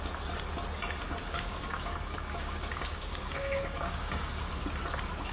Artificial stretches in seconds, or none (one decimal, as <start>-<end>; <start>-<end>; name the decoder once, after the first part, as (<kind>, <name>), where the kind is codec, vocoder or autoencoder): 1.2-4.4 (codec, DAC)